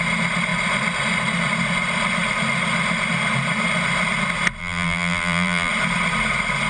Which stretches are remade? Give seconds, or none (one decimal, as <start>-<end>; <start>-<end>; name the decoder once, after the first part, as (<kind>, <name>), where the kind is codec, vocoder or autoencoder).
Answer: 4.6-5.7 (vocoder, BigVGAN v2)